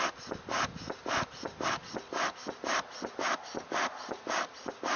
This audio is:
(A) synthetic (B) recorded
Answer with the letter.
B